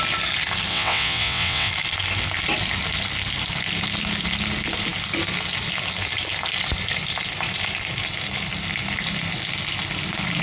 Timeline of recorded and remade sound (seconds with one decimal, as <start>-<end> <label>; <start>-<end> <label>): 0.0-0.7 recorded; 0.7-1.7 remade; 1.7-10.4 recorded